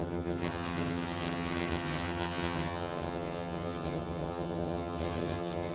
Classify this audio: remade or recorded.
remade